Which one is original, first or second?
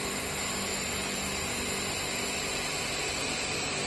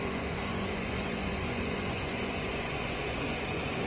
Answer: first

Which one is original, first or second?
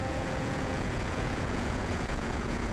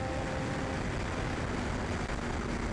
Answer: second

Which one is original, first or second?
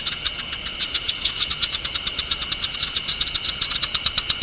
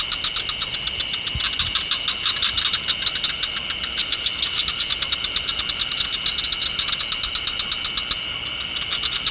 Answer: second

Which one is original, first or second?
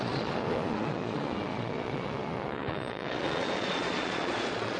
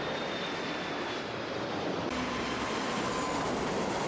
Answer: second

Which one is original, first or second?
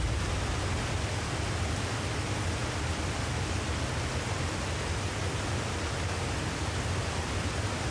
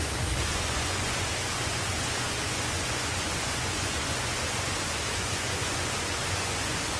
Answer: first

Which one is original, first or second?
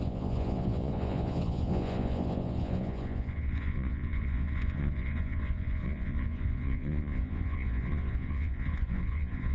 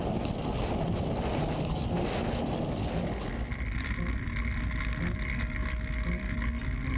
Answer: second